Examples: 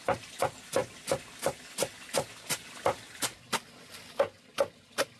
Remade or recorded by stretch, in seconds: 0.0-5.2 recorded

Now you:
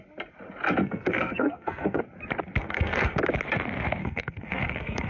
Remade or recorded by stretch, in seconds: 0.0-0.8 recorded; 0.8-2.0 remade; 2.0-2.6 recorded; 2.6-3.2 remade; 3.2-4.0 recorded; 4.0-5.1 remade

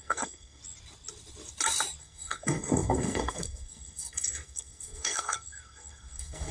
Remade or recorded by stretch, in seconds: 0.0-0.6 remade; 0.6-2.0 recorded; 2.0-6.5 remade

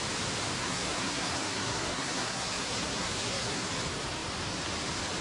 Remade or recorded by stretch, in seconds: 0.0-0.6 recorded; 0.6-3.7 remade; 3.7-5.2 recorded